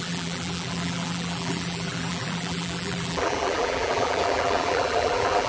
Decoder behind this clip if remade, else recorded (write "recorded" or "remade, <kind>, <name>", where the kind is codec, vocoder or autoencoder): remade, vocoder, BigVGAN v2